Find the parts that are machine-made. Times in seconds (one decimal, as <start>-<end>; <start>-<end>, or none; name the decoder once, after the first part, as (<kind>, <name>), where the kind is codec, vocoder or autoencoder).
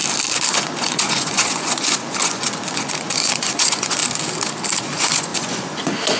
0.5-4.0 (vocoder, Vocos); 4.8-6.2